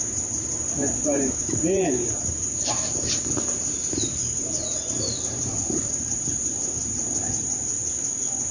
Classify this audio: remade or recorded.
remade